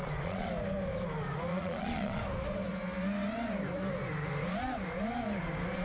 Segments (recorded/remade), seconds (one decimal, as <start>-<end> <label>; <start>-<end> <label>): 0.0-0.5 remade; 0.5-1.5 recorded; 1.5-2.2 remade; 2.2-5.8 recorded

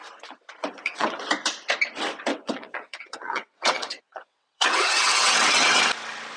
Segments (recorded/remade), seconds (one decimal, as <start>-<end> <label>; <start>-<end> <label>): 0.0-0.6 recorded; 0.6-1.3 remade; 1.3-2.3 recorded; 2.3-5.8 remade; 5.8-6.4 recorded

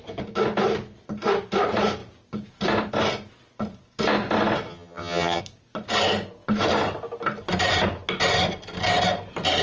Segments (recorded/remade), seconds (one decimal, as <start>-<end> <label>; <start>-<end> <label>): 0.0-4.7 recorded; 4.7-5.4 remade; 5.4-9.6 recorded

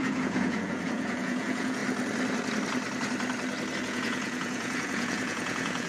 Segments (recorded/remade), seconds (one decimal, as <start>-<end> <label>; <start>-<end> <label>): 0.0-1.8 remade; 1.8-3.8 recorded; 3.8-5.9 remade

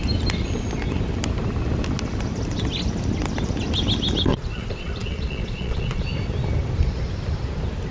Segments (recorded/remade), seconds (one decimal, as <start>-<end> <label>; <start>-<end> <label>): 0.0-4.3 recorded; 4.3-6.0 remade; 6.0-7.9 recorded

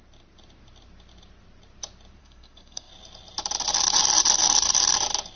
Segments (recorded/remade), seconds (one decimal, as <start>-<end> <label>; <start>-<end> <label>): 0.0-2.2 recorded; 2.2-2.9 remade; 2.9-5.4 recorded